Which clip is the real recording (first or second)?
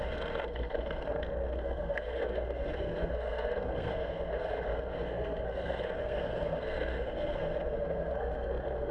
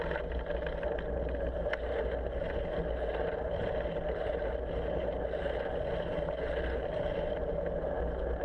second